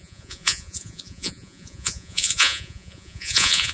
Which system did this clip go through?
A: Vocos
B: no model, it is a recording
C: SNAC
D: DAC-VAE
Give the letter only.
A